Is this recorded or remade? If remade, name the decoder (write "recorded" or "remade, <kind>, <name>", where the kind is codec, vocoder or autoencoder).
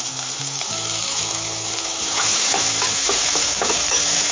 remade, autoencoder, DAC-VAE